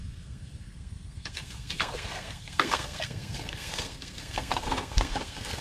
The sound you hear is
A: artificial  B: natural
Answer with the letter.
A